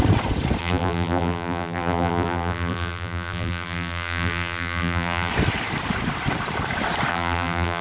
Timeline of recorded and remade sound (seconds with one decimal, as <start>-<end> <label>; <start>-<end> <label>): 0.0-0.6 recorded; 0.6-5.3 remade; 5.3-7.1 recorded; 7.1-7.8 remade